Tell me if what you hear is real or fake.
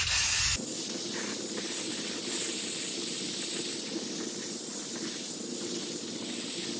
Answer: real